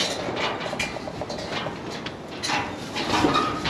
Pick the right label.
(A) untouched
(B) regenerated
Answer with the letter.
A